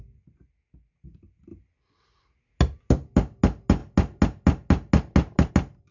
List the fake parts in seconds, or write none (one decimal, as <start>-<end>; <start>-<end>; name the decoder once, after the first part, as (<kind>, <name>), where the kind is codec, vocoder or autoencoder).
none